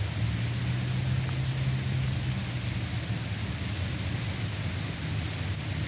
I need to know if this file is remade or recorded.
recorded